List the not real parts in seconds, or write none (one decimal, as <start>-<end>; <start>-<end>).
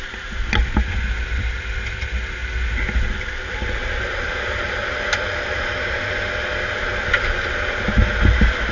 none